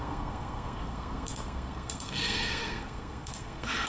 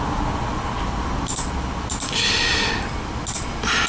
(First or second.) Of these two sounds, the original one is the second